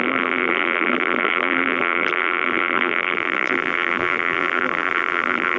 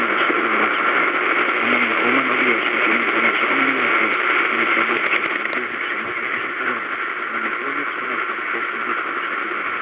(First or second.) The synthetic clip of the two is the first